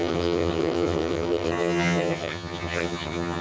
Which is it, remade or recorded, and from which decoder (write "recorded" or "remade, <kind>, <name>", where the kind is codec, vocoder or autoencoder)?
remade, vocoder, HiFi-GAN